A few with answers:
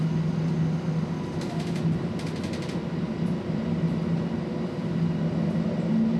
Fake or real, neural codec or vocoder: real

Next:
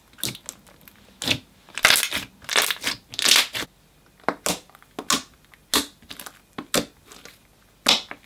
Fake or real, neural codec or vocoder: real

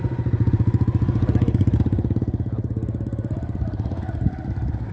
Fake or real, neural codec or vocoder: real